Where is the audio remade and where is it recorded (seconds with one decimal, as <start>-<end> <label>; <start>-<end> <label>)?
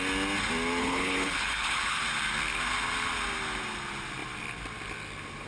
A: 0.0-0.8 recorded; 0.8-2.0 remade; 2.0-5.5 recorded